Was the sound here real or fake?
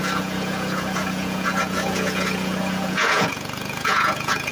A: fake